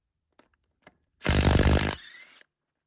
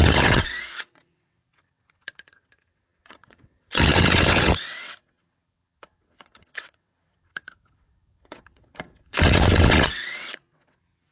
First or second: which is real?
first